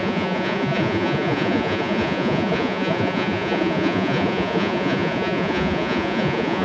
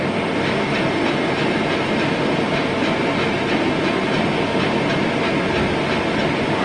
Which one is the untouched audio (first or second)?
second